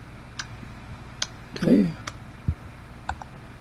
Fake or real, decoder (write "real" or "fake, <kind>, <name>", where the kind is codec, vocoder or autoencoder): real